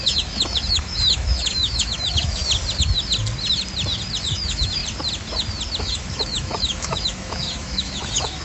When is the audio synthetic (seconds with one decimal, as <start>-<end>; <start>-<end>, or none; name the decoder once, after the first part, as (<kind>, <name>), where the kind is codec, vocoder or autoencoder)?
0.0-2.4 (autoencoder, DAC-VAE); 4.2-4.8; 5.8-8.4